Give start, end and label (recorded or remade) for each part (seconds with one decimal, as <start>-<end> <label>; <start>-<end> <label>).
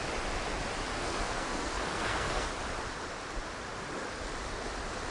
0.0-0.9 recorded; 0.9-2.5 remade; 2.5-5.1 recorded